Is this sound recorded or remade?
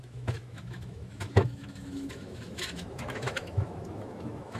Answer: remade